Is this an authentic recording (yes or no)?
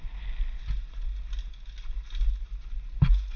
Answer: yes